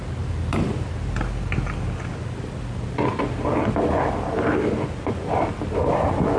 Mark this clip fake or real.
real